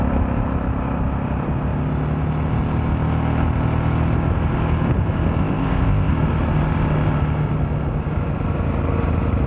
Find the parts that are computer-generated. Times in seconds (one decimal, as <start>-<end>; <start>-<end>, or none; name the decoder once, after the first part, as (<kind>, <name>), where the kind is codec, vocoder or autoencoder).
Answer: 5.4-6.1 (codec, ZipCodec)

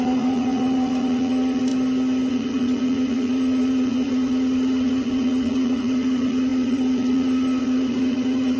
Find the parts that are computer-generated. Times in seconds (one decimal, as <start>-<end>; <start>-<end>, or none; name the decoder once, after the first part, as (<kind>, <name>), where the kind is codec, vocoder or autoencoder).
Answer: 0.0-1.7 (vocoder, Vocos); 2.3-8.6

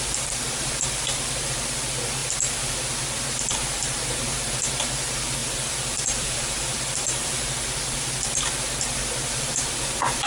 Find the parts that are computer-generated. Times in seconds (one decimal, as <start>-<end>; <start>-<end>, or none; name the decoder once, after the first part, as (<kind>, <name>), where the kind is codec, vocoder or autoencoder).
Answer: 5.4-7.4 (vocoder, BigVGAN v2)

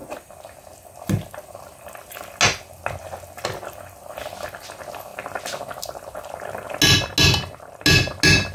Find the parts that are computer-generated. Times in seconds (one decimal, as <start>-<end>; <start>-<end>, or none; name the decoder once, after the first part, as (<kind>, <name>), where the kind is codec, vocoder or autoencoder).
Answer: none

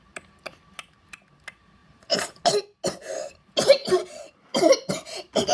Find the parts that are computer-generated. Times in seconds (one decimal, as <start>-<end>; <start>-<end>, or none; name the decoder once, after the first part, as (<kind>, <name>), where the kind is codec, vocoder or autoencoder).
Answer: 1.8-2.4 (vocoder, BigVGAN v2); 3.8-4.9

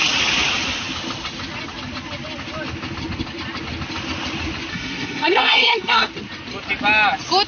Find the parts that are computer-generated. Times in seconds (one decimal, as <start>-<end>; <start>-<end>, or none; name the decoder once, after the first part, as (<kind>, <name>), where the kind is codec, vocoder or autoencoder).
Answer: 4.7-6.1 (codec, SNAC)

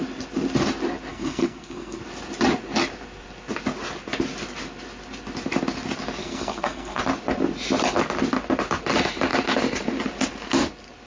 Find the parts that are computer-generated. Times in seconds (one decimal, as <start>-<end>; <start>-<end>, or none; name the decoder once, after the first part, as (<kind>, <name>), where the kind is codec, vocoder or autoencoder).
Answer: 1.1-2.0 (codec, SNAC); 6.2-7.0